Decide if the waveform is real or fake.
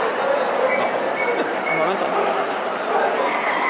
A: real